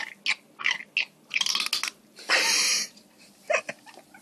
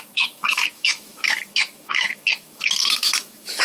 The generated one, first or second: second